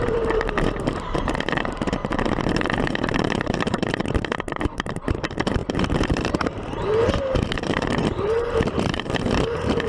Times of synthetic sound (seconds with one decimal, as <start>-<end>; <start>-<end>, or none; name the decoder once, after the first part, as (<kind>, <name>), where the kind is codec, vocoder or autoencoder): 0.0-9.9 (vocoder, BigVGAN v2)